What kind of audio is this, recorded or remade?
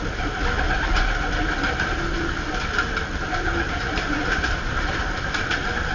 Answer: recorded